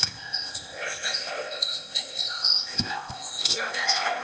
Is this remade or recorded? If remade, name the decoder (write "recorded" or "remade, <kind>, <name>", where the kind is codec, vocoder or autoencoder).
remade, codec, ZipCodec